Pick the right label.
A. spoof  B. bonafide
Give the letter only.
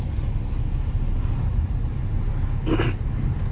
B